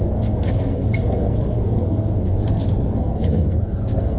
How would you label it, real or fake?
fake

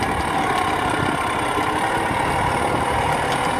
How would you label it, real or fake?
real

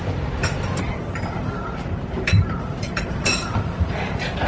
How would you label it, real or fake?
fake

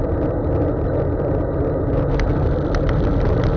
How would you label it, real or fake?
real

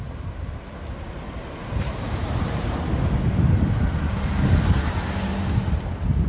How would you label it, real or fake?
real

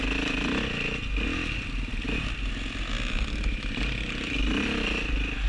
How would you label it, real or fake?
real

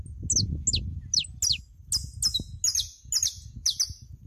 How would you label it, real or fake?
real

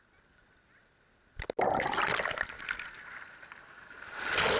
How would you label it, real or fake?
real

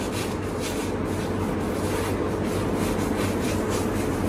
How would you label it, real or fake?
real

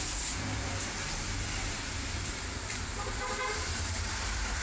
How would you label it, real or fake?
fake